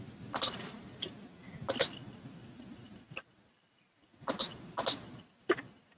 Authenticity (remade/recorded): recorded